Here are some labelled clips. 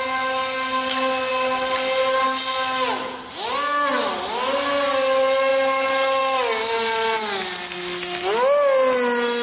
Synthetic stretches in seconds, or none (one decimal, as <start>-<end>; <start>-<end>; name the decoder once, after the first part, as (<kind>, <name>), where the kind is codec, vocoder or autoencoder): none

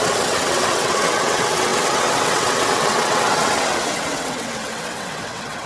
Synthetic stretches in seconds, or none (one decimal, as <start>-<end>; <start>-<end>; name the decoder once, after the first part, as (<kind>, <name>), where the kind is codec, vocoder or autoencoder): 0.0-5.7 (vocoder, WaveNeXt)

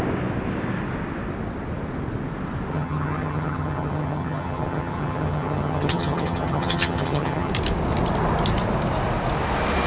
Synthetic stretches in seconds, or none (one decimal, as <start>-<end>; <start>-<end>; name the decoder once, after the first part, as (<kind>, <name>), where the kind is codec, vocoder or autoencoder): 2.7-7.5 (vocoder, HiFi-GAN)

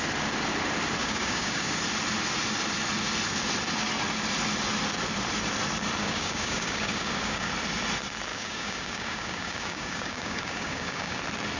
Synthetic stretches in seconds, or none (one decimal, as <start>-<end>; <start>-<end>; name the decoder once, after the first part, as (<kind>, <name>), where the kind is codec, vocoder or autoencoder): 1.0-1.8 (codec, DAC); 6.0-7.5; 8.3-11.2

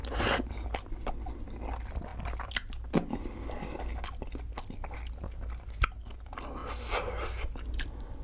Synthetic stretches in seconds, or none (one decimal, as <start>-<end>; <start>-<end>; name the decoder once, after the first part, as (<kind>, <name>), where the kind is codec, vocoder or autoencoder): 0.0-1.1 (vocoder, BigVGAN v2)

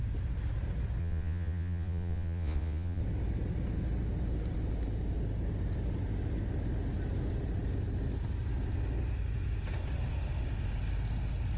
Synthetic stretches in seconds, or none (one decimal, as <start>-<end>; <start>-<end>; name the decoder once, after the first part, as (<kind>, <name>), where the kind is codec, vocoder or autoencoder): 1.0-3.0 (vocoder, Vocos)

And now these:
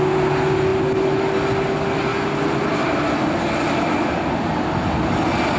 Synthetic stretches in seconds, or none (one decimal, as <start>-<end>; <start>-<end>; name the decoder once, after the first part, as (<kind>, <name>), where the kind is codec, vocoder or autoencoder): none